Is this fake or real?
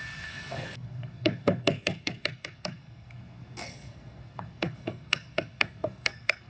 fake